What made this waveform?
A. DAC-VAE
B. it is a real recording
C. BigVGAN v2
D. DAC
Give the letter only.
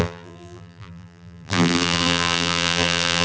C